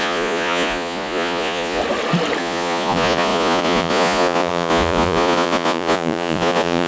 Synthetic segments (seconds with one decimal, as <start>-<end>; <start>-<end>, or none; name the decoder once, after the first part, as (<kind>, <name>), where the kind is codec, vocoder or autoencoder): 0.0-1.8 (vocoder, Vocos); 2.4-6.9